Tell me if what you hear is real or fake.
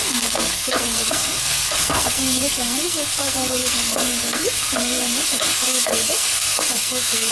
fake